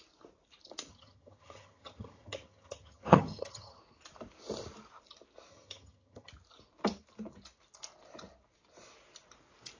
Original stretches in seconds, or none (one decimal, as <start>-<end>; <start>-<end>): 0.0-0.9; 3.8-5.5; 6.3-9.8